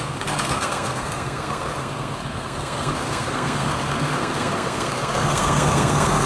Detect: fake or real fake